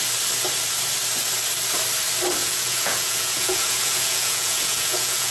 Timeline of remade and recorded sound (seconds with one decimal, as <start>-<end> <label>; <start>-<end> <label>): 0.0-2.4 recorded; 2.4-5.3 remade